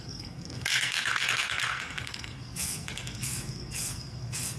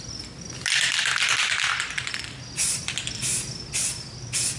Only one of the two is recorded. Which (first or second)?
second